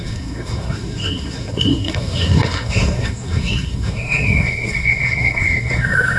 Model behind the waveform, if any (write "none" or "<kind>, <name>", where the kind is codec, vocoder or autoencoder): codec, SNAC